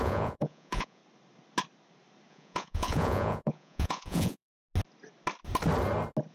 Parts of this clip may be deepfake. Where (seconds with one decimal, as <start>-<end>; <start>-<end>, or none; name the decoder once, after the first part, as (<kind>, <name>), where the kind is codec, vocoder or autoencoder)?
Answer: 0.0-1.0 (vocoder, Vocos); 2.3-4.5